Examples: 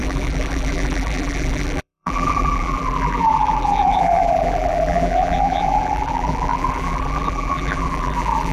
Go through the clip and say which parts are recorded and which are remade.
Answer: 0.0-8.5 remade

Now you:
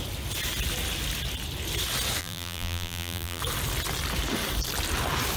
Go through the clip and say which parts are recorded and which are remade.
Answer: 0.0-2.2 recorded; 2.2-3.4 remade; 3.4-5.4 recorded